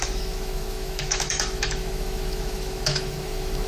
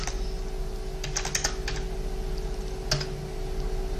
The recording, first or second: second